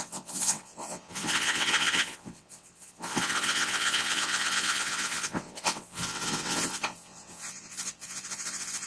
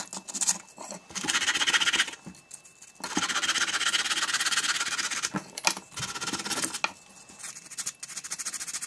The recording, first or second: second